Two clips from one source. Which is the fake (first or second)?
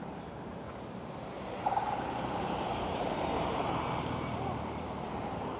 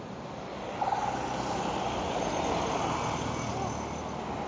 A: first